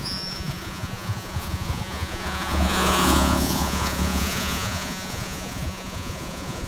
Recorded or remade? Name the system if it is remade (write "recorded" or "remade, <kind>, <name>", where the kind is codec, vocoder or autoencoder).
remade, vocoder, Vocos